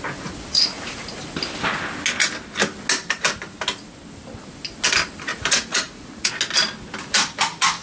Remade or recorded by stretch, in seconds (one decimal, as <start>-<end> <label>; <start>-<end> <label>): 0.0-0.5 recorded; 0.5-1.2 remade; 1.2-5.3 recorded; 5.3-6.3 remade; 6.3-7.8 recorded